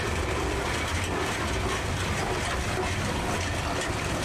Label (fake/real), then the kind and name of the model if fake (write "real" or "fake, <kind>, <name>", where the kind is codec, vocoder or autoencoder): fake, vocoder, BigVGAN v2